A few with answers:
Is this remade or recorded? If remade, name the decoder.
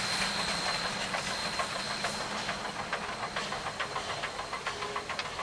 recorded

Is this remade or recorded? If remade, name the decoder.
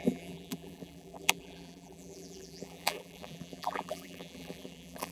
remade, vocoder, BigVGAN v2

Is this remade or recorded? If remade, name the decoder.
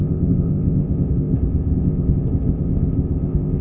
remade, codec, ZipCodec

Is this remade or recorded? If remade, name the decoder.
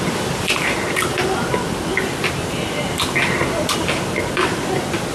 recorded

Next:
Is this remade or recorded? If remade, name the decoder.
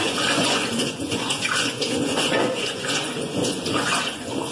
remade, vocoder, Vocos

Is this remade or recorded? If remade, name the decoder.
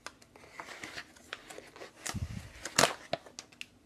recorded